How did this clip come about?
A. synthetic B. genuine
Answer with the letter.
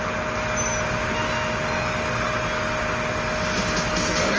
B